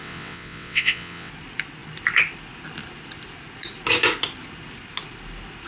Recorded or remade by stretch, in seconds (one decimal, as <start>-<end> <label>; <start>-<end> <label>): 0.0-1.3 remade; 1.3-5.7 recorded